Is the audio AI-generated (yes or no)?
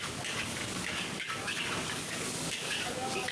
yes